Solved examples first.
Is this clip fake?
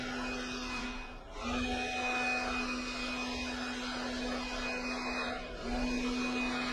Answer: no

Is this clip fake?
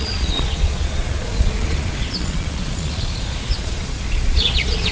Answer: yes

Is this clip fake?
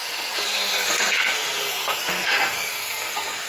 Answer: yes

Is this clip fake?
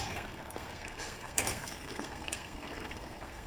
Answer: yes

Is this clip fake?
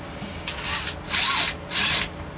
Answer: no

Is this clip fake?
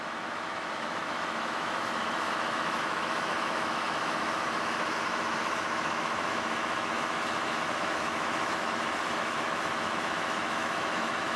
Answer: yes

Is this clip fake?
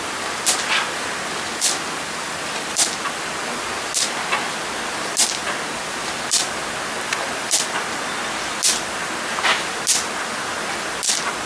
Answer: no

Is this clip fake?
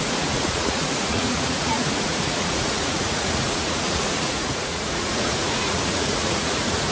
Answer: yes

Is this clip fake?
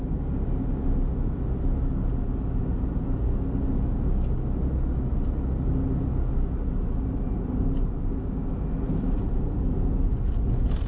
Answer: no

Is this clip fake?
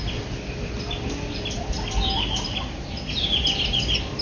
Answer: no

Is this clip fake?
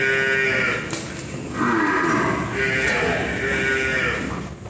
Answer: no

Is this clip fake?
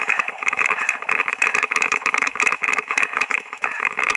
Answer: yes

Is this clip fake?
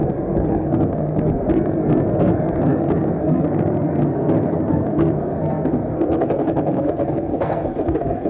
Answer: yes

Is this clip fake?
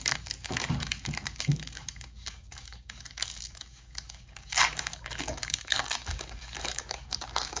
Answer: yes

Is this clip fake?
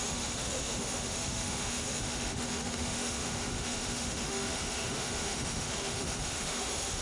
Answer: yes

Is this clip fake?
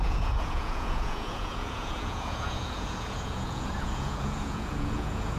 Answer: yes